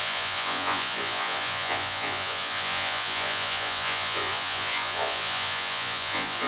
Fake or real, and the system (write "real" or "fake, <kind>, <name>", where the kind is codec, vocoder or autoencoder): fake, vocoder, Vocos